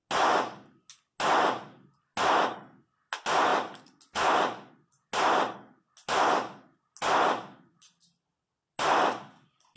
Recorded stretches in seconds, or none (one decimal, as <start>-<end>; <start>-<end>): 0.0-9.8